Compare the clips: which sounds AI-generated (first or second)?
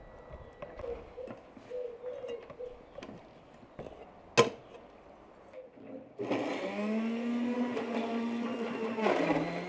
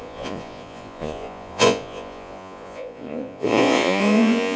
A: second